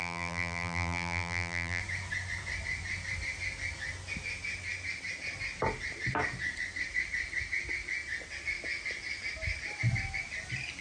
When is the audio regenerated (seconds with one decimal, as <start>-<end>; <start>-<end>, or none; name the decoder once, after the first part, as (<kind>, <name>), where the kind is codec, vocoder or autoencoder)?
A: 0.0-1.8 (vocoder, BigVGAN v2)